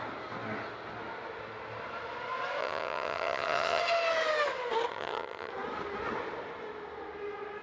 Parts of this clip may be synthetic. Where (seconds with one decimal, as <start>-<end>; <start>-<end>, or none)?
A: 2.6-3.8; 4.9-5.5